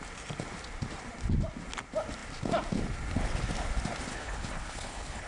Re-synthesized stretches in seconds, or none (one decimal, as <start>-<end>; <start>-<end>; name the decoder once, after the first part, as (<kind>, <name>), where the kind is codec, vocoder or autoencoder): 4.1-5.3 (codec, HILCodec)